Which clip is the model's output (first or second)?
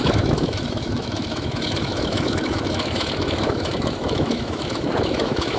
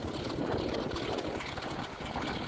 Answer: first